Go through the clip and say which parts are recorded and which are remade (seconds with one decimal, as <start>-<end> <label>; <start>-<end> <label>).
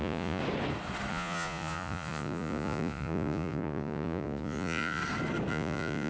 0.0-0.4 remade; 0.4-1.1 recorded; 1.1-5.0 remade; 5.0-5.5 recorded; 5.5-6.1 remade